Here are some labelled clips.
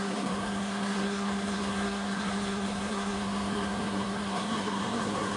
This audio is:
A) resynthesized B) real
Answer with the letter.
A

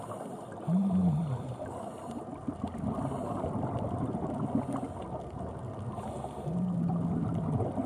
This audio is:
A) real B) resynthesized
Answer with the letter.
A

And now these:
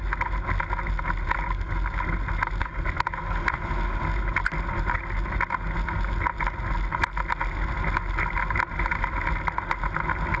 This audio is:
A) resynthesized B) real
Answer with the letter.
B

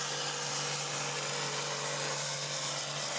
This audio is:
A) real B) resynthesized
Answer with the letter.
A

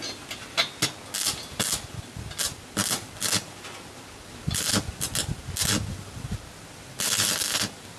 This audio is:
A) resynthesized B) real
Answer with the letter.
B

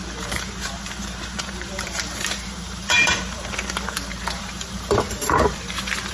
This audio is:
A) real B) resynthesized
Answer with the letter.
B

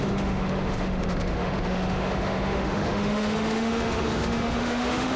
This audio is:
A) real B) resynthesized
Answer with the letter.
B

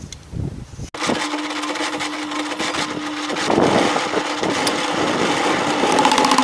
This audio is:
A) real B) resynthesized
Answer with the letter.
A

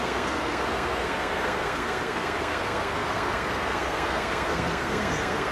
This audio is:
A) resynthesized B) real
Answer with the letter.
A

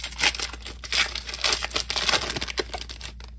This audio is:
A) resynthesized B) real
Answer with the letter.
B